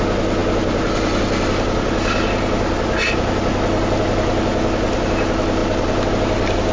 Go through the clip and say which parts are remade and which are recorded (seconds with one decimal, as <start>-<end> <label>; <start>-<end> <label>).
0.0-6.7 recorded